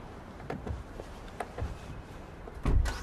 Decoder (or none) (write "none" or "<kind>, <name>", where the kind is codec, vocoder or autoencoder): vocoder, BigVGAN v2